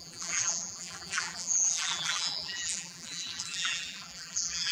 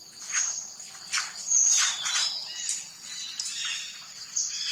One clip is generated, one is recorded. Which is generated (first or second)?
first